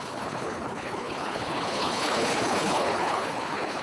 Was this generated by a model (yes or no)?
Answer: yes